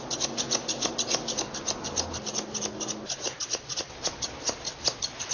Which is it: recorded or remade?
recorded